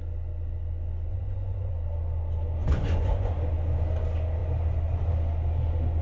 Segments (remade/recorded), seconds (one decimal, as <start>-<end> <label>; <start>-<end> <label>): 0.0-1.1 recorded; 1.1-1.7 remade; 1.7-2.6 recorded; 2.6-3.3 remade; 3.3-6.0 recorded